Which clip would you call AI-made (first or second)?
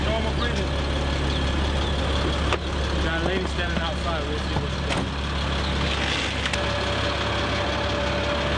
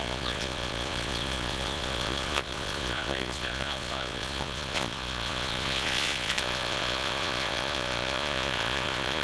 second